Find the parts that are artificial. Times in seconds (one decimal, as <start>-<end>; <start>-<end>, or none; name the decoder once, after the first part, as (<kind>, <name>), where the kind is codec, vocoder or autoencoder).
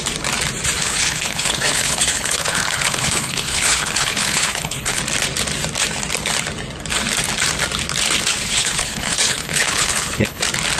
0.8-5.0 (codec, HILCodec); 8.3-10.4